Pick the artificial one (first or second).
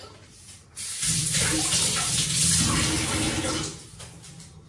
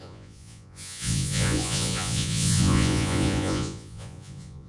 second